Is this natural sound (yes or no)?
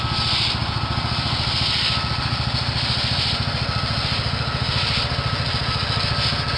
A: yes